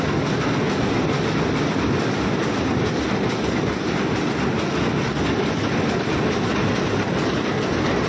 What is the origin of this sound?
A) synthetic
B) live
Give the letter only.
B